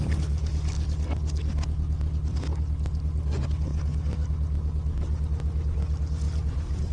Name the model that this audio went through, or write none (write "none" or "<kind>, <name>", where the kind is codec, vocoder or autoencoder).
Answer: none